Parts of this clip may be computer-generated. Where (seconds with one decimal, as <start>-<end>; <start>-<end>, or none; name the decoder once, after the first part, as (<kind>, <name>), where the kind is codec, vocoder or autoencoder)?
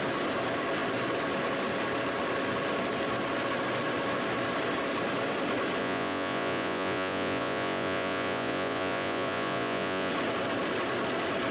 5.8-10.1 (vocoder, Vocos)